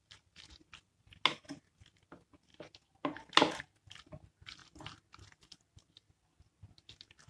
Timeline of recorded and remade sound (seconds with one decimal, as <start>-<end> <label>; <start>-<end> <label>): 0.0-7.3 recorded